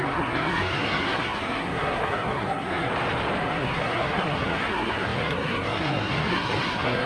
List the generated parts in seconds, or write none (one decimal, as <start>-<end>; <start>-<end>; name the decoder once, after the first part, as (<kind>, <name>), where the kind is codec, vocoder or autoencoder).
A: 0.0-2.9 (codec, SNAC); 3.4-7.1